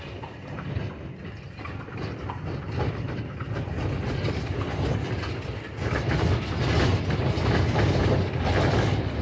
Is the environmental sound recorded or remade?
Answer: recorded